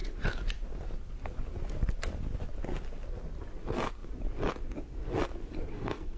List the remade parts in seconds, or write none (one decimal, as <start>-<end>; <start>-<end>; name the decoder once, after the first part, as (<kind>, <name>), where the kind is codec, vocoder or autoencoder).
5.7-6.2 (codec, SNAC)